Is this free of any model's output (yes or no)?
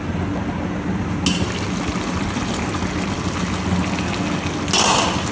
yes